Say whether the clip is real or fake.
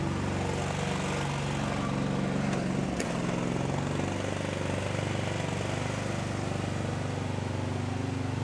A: real